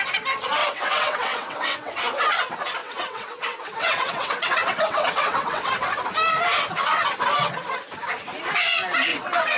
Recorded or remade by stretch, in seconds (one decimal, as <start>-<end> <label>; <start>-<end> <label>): 0.0-0.6 recorded; 0.6-1.9 remade; 1.9-2.8 recorded; 2.8-5.7 remade; 5.7-9.1 recorded; 9.1-9.6 remade